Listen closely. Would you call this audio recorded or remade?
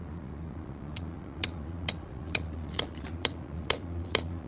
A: remade